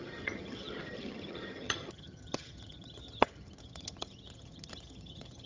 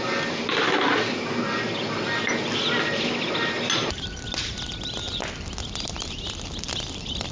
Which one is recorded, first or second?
second